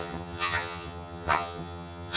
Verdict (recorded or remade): remade